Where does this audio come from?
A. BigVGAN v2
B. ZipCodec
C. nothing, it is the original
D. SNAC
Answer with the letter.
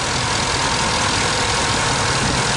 C